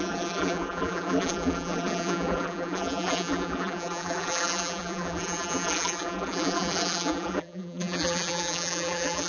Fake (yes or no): yes